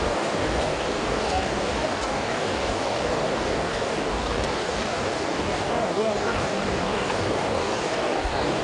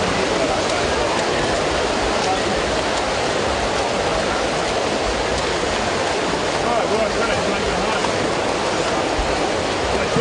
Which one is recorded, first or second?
second